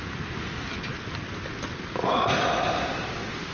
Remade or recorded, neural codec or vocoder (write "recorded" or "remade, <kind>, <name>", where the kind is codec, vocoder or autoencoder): recorded